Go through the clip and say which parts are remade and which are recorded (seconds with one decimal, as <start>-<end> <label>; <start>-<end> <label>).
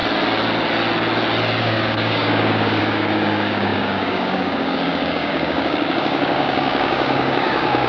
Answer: 0.0-1.6 recorded; 1.6-7.9 remade